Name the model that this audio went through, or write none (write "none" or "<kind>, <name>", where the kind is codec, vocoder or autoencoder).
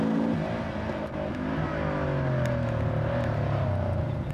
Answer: none